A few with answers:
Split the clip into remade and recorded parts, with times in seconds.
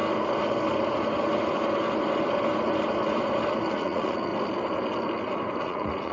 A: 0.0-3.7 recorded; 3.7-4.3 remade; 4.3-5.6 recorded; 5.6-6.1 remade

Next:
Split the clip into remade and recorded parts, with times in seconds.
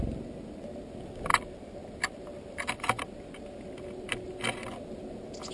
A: 0.0-5.5 recorded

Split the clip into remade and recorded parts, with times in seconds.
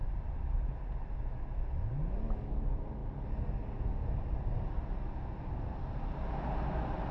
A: 0.0-7.1 recorded